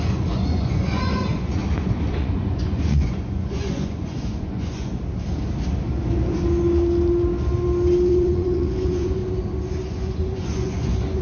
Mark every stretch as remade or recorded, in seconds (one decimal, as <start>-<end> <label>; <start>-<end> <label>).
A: 0.0-1.6 remade; 1.6-2.1 recorded; 2.1-4.9 remade; 4.9-8.1 recorded; 8.1-9.2 remade; 9.2-9.9 recorded; 9.9-11.2 remade